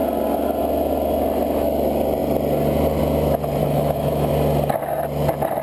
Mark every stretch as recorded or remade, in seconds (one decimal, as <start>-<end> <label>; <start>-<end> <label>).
0.0-3.6 recorded; 3.6-4.3 remade; 4.3-5.6 recorded